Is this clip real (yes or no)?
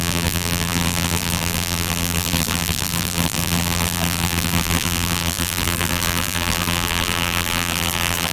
no